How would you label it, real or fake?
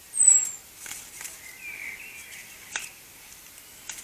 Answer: real